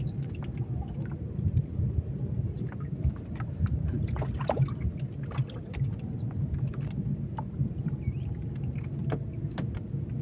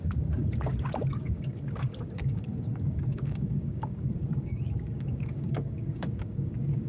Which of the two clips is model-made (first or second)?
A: second